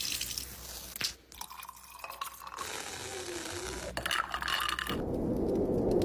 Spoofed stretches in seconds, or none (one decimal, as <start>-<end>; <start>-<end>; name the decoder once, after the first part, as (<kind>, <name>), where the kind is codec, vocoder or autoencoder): none